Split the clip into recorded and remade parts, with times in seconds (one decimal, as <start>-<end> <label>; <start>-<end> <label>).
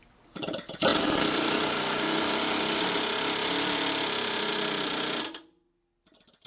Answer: 0.0-6.5 recorded